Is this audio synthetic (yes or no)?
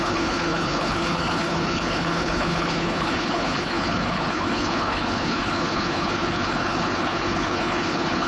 yes